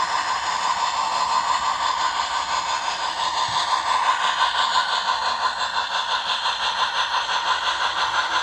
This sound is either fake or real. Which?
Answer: real